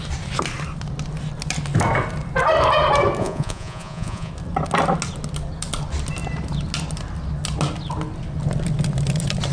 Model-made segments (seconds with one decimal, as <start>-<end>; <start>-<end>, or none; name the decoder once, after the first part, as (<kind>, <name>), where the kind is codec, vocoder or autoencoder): 3.2-4.3 (vocoder, Vocos)